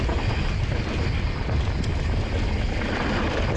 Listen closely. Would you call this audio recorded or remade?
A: recorded